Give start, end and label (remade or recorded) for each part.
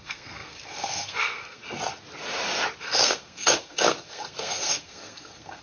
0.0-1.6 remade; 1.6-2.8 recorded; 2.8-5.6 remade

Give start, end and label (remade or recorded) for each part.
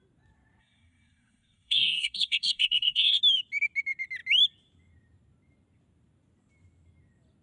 0.0-0.6 recorded; 0.6-3.2 remade; 3.2-7.4 recorded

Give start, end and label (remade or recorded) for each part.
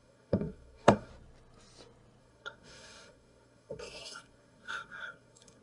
0.0-1.1 remade; 1.1-2.2 recorded; 2.2-5.6 remade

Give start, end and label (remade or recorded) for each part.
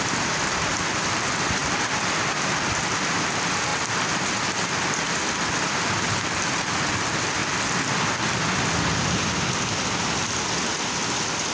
0.0-7.4 remade; 7.4-11.1 recorded; 11.1-11.5 remade